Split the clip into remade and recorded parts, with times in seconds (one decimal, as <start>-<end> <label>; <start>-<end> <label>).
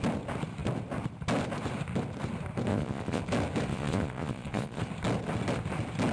0.0-2.7 recorded; 2.7-3.2 remade; 3.2-3.7 recorded; 3.7-4.8 remade; 4.8-6.1 recorded